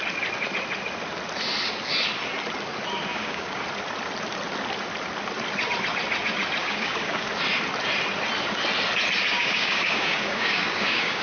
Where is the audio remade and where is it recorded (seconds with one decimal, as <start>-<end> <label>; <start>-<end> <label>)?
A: 0.0-3.1 recorded; 3.1-3.6 remade; 3.6-6.6 recorded; 6.6-7.3 remade; 7.3-9.3 recorded; 9.3-11.2 remade

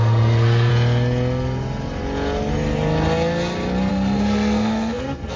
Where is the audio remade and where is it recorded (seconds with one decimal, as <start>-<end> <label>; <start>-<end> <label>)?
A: 0.0-0.7 remade; 0.7-3.9 recorded; 3.9-5.4 remade

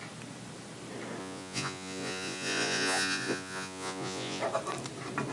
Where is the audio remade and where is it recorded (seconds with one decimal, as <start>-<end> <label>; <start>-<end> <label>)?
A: 0.0-1.2 recorded; 1.2-4.4 remade; 4.4-5.3 recorded

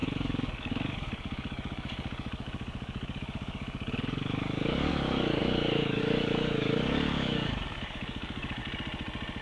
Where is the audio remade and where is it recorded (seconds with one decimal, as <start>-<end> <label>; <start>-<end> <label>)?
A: 0.0-8.6 remade; 8.6-9.4 recorded

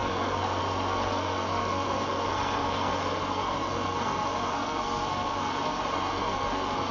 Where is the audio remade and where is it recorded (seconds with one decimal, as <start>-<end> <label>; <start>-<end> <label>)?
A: 0.0-6.9 remade

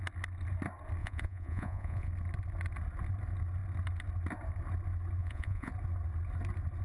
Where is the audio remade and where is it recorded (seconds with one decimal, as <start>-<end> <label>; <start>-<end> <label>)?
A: 0.0-1.0 recorded; 1.0-2.1 remade; 2.1-5.2 recorded; 5.2-5.7 remade; 5.7-6.8 recorded